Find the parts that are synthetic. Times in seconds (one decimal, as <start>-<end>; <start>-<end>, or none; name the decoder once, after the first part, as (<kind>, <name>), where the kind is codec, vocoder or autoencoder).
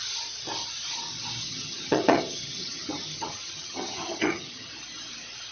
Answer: 1.4-4.7 (vocoder, HiFi-GAN)